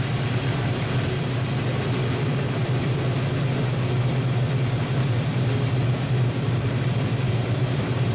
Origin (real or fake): fake